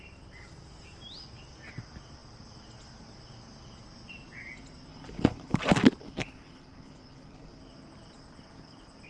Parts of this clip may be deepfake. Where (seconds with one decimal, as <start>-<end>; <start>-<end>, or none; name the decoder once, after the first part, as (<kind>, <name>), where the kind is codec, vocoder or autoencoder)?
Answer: 4.9-5.6 (codec, HILCodec); 6.0-7.6